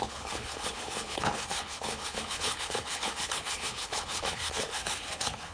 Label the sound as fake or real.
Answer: fake